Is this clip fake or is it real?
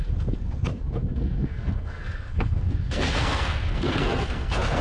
fake